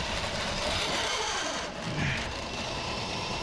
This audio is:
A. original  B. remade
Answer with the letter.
B